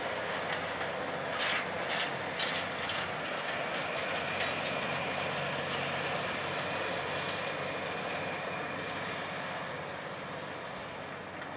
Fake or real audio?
real